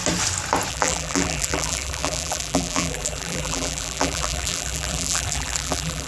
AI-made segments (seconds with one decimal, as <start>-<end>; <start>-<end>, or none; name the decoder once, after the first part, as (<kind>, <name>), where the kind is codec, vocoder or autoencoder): 0.7-6.1 (vocoder, BigVGAN v2)